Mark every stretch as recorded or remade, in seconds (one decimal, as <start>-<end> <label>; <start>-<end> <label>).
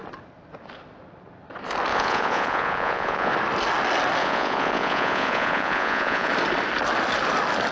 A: 0.0-1.9 recorded; 1.9-3.3 remade; 3.3-4.2 recorded; 4.2-6.3 remade; 6.3-7.7 recorded